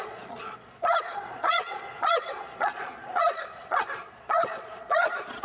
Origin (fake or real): fake